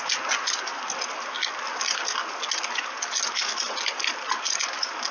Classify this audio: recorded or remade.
recorded